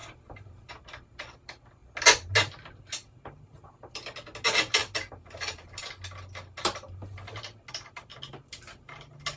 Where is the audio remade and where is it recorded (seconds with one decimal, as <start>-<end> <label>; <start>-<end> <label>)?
0.0-0.7 remade; 0.7-9.4 recorded